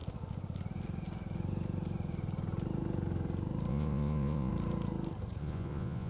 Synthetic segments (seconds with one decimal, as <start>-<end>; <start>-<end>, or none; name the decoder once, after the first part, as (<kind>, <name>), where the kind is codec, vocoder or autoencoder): 3.7-4.5 (vocoder, Vocos); 5.4-6.1